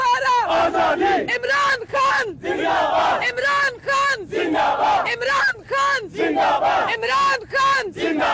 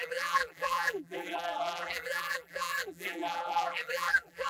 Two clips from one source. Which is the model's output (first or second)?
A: second